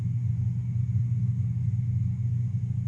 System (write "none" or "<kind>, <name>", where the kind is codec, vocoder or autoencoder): none